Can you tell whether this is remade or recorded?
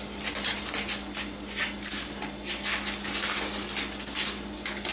recorded